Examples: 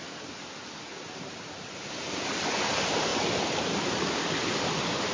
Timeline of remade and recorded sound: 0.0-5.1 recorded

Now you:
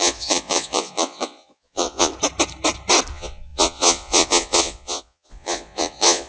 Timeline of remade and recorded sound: 0.0-2.1 remade; 2.1-3.1 recorded; 3.1-6.3 remade

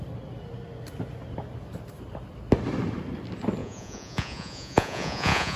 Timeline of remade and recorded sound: 0.0-3.6 recorded; 3.6-5.6 remade

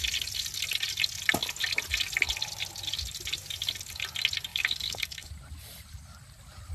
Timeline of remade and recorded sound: 0.0-4.5 recorded; 4.5-5.3 remade; 5.3-6.7 recorded

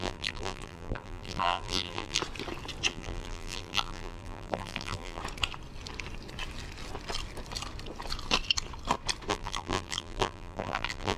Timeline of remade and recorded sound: 0.0-2.2 remade; 2.2-2.9 recorded; 2.9-5.2 remade; 5.2-9.3 recorded; 9.3-11.2 remade